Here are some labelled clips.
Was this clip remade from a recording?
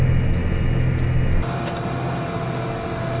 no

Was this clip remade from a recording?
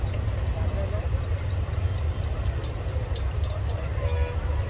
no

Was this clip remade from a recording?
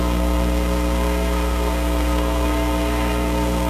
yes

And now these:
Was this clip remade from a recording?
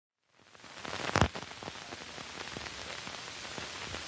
no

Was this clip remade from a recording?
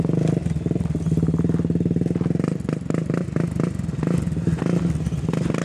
no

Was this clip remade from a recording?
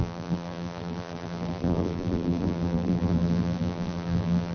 yes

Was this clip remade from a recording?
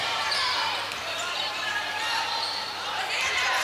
yes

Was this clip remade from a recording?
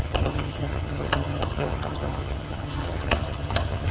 yes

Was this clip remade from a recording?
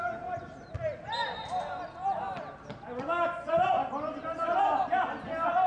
no